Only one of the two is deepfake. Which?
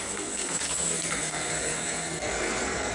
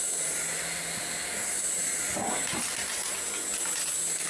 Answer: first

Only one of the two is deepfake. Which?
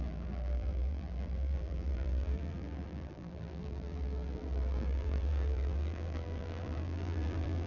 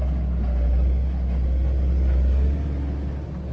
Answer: first